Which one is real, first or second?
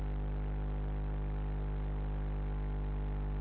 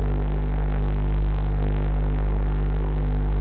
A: first